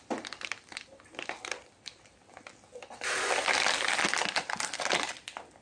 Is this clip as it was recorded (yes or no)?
yes